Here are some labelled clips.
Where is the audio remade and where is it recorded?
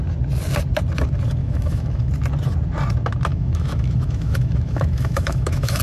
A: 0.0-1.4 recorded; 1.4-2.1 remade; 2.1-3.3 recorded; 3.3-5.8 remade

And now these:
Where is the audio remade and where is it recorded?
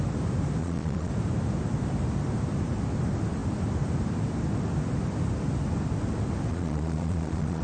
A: 0.0-0.6 recorded; 0.6-1.1 remade; 1.1-6.5 recorded; 6.5-7.6 remade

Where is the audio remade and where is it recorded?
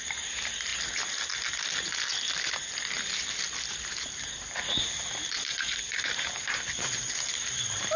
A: 0.0-0.7 remade; 0.7-3.7 recorded; 3.7-8.0 remade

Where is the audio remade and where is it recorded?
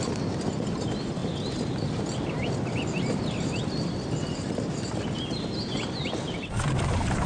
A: 0.0-7.3 recorded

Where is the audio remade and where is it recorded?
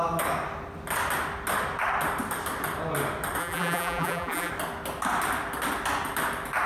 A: 0.0-3.4 recorded; 3.4-4.5 remade; 4.5-6.7 recorded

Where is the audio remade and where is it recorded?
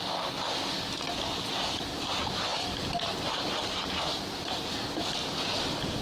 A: 0.0-6.0 recorded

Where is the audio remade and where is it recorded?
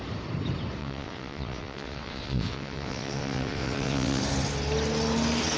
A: 0.0-0.8 recorded; 0.8-4.2 remade; 4.2-5.6 recorded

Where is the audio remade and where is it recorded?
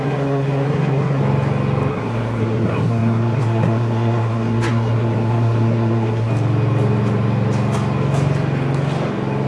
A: 0.0-1.2 remade; 1.2-1.9 recorded; 1.9-6.3 remade; 6.3-9.5 recorded